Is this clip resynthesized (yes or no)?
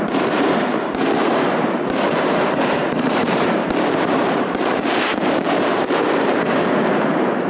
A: yes